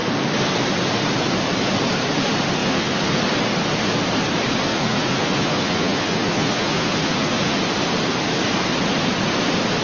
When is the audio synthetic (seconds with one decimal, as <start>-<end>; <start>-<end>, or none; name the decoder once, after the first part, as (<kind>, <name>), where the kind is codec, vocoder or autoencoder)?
2.6-3.2 (vocoder, Vocos); 4.7-7.6